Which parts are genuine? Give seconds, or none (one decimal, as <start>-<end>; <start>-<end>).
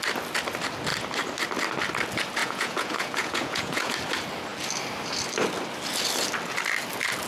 0.0-2.4; 3.9-7.3